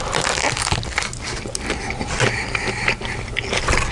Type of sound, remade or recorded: recorded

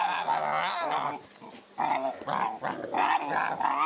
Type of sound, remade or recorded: recorded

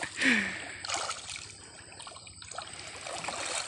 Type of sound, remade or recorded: recorded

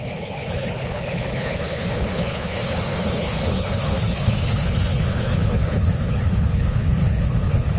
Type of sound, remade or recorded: remade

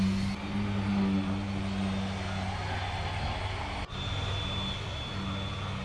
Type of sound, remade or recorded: recorded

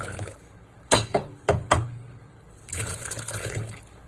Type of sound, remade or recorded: remade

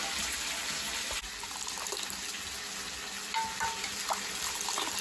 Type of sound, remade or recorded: recorded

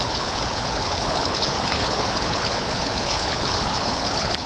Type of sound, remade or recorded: remade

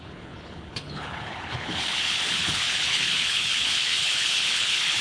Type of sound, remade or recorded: remade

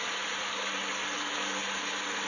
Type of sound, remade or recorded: recorded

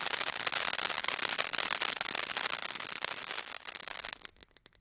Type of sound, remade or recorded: recorded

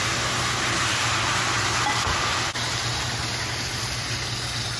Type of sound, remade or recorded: recorded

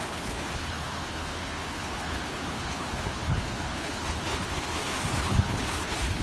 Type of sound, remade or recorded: remade